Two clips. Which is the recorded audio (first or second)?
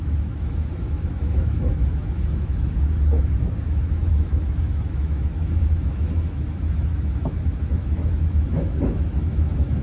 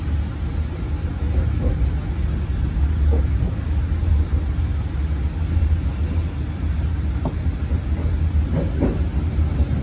second